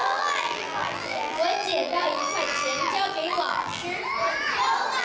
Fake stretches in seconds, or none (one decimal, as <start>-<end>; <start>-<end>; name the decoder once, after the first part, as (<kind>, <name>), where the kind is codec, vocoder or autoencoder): 0.0-3.8 (vocoder, BigVGAN v2)